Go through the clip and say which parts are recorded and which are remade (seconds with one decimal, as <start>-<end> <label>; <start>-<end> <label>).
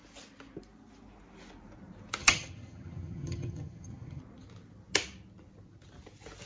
0.0-2.2 recorded; 2.2-4.2 remade; 4.2-6.5 recorded